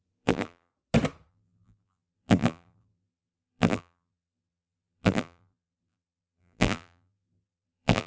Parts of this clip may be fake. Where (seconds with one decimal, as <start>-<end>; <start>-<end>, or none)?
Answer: 0.0-0.7; 1.3-8.1